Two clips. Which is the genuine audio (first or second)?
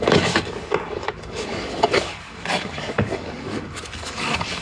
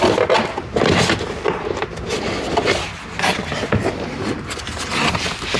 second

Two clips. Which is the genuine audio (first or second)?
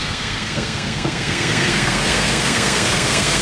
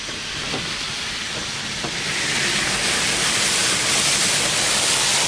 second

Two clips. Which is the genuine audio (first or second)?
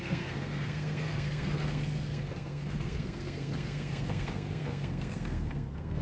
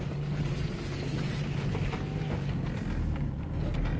second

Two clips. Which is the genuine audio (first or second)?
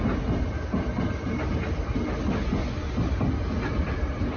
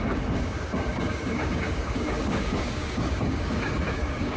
first